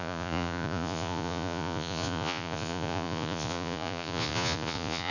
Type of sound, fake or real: fake